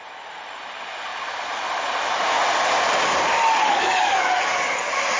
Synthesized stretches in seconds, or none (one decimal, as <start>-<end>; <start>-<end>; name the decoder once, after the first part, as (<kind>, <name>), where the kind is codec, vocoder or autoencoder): 3.6-4.4 (codec, DAC)